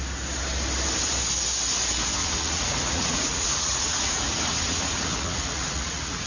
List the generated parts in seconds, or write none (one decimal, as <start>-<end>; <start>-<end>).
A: 2.2-6.3

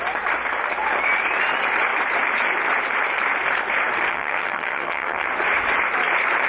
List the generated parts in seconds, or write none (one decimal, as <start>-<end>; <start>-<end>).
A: 4.1-5.3

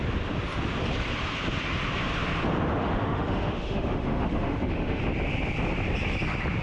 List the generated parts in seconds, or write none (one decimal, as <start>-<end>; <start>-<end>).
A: 2.8-5.0

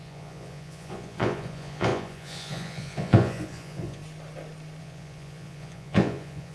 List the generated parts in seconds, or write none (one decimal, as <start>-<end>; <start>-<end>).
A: 0.0-4.0; 4.8-6.5

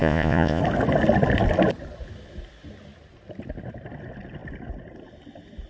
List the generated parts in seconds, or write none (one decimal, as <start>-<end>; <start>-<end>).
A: 0.0-0.6